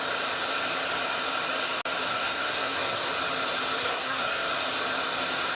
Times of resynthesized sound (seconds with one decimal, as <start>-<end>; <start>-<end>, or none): 2.1-3.1; 3.8-4.5